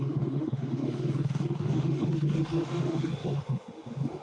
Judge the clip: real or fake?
fake